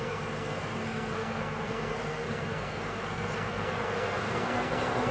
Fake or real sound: fake